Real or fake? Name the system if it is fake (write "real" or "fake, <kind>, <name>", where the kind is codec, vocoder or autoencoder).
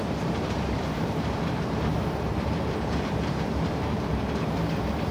fake, vocoder, BigVGAN v2